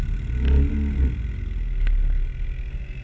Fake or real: real